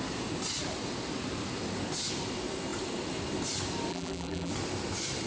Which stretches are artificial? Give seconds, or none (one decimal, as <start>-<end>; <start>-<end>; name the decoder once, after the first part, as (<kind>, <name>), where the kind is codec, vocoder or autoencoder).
3.9-4.5 (vocoder, BigVGAN v2)